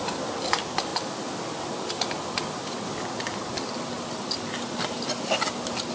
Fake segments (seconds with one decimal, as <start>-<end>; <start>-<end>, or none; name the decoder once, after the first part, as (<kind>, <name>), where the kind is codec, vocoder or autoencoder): none